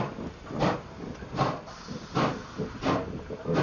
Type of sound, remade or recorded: recorded